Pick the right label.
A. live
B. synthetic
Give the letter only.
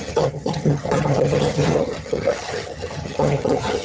B